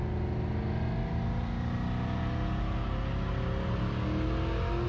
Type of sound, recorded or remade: recorded